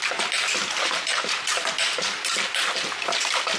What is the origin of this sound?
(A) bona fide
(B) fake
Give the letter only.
A